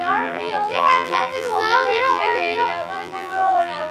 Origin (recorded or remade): remade